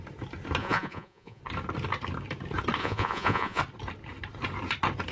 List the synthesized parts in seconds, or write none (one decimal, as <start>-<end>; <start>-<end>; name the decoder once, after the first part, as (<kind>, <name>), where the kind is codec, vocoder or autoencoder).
0.6-1.4 (vocoder, Vocos); 2.8-3.6